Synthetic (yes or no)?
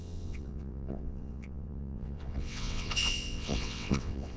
yes